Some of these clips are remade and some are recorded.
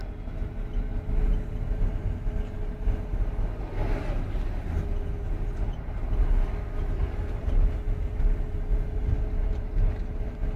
recorded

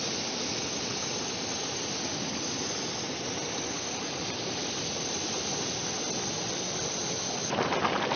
recorded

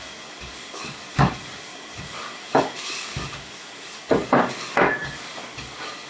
remade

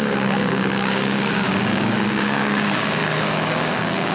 remade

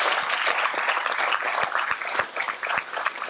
recorded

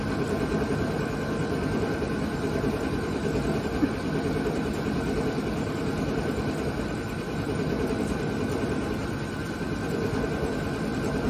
recorded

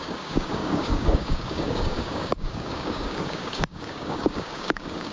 remade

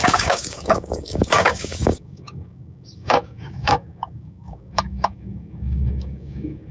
remade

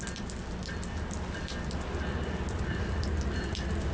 recorded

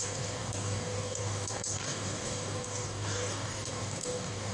remade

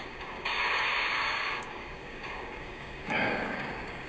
remade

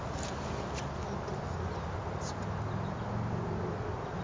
recorded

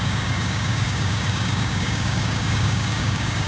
remade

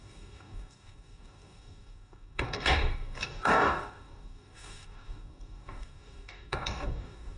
remade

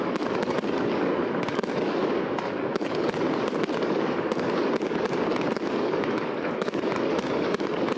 remade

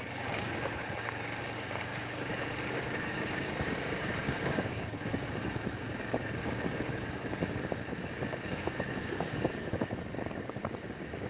remade